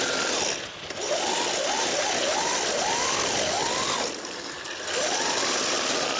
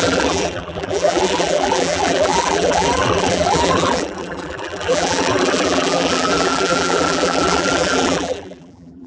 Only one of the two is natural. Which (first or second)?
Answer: first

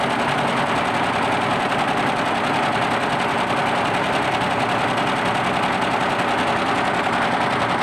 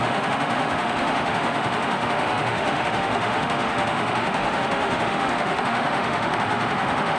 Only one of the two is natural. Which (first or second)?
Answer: first